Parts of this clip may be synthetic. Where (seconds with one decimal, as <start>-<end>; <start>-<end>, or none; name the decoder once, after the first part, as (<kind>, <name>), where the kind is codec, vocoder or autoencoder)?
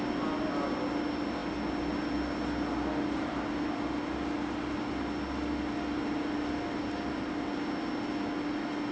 none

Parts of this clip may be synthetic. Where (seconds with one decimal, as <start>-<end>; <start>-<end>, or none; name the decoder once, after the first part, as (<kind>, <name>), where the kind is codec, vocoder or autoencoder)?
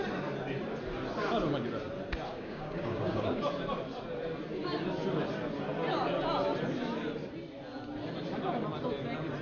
2.3-3.4 (codec, DAC)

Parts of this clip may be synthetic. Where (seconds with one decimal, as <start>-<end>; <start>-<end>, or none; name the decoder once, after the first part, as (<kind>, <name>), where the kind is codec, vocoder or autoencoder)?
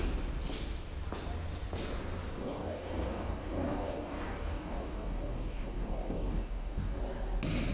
2.4-7.0 (codec, DAC)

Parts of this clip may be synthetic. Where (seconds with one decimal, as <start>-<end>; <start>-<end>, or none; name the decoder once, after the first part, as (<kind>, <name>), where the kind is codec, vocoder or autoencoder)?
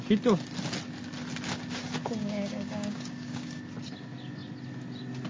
2.2-3.6 (codec, DAC)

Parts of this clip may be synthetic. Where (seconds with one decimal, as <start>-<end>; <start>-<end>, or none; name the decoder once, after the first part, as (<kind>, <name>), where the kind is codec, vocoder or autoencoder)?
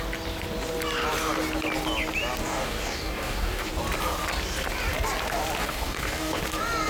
2.4-3.7 (codec, DAC); 5.6-6.4